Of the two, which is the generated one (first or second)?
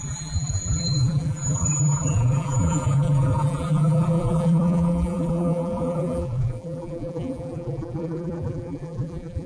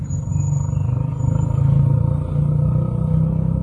first